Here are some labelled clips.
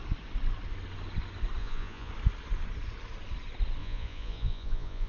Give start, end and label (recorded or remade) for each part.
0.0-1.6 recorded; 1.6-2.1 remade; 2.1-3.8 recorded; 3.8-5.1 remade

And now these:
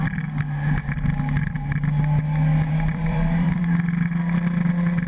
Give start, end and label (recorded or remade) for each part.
0.0-2.7 recorded; 2.7-3.6 remade; 3.6-5.1 recorded

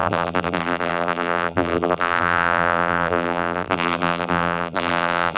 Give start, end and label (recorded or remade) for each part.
0.0-5.4 remade

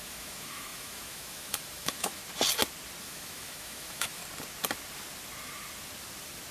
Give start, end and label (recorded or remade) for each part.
0.0-2.2 remade; 2.2-3.0 recorded; 3.0-4.2 remade; 4.2-6.5 recorded

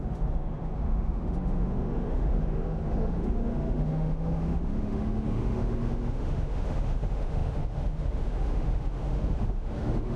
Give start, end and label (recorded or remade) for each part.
0.0-10.2 remade

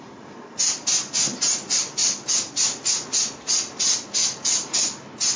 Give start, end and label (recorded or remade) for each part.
0.0-5.4 recorded

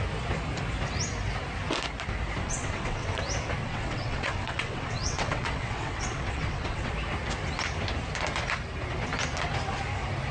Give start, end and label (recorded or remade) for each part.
0.0-2.4 recorded; 2.4-3.2 remade; 3.2-3.6 recorded; 3.6-6.9 remade; 6.9-10.3 recorded